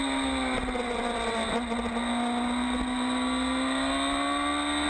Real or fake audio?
real